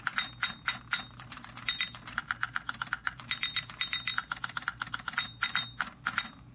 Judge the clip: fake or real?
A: fake